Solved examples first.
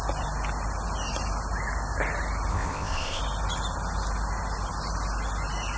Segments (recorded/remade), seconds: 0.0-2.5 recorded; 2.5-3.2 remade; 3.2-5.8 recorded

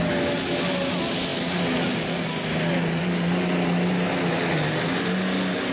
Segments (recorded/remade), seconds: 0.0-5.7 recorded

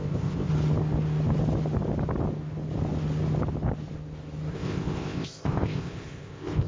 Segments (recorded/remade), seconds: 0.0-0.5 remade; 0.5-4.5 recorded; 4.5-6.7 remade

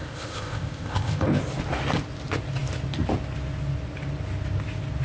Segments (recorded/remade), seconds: 0.0-1.4 remade; 1.4-5.0 recorded